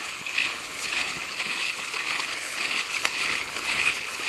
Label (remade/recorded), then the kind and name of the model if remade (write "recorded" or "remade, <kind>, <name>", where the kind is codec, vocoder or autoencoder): remade, codec, HILCodec